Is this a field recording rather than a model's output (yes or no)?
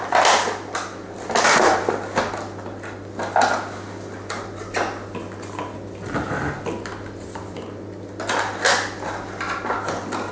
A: yes